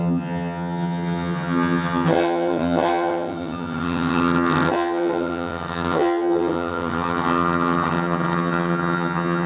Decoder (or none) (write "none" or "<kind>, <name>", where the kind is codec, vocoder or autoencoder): vocoder, HiFi-GAN